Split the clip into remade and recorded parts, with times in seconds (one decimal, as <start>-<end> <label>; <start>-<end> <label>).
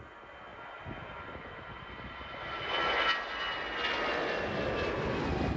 0.0-5.6 recorded